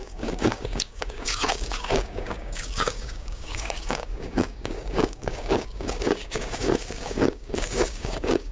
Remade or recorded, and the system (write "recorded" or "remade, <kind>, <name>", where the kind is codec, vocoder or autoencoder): remade, codec, DAC